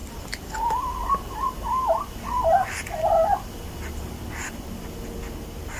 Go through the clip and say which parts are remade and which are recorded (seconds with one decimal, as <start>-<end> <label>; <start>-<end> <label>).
0.0-5.8 recorded